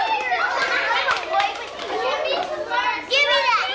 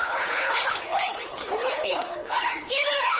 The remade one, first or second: second